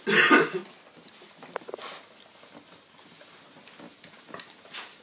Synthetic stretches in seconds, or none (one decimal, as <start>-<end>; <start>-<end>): 3.9-5.0